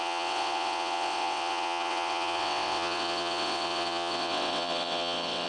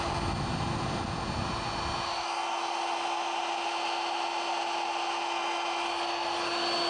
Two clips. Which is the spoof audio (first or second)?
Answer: first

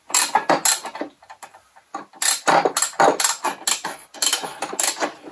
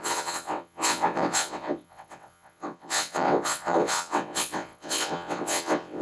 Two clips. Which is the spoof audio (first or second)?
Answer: second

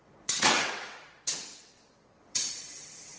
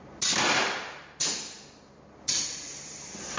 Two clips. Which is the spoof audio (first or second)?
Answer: first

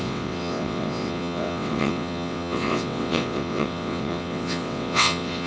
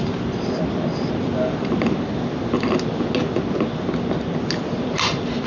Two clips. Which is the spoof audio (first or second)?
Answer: first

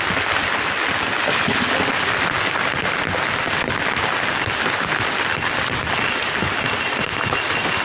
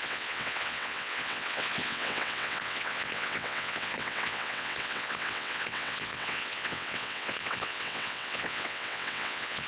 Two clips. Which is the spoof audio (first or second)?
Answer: second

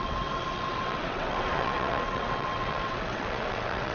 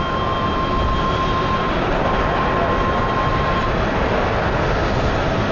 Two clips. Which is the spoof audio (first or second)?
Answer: first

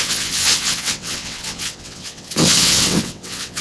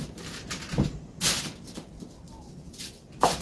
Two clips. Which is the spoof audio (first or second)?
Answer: first